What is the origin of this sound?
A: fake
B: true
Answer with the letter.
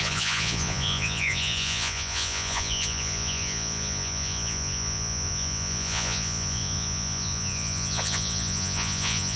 A